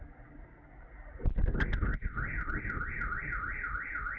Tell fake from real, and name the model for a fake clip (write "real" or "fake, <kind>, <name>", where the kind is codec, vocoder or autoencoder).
real